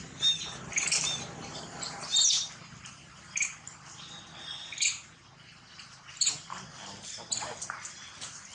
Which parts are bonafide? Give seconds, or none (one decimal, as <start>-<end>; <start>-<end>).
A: 0.0-2.1; 3.1-8.5